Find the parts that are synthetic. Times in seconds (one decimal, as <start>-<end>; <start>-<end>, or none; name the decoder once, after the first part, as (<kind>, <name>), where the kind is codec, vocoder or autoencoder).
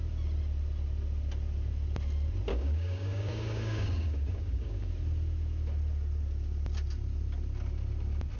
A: 2.5-4.9 (codec, DAC)